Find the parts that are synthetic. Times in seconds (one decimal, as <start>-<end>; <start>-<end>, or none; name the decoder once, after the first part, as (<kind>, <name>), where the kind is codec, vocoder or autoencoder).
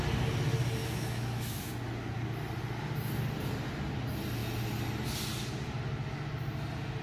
0.8-1.7 (autoencoder, DAC-VAE)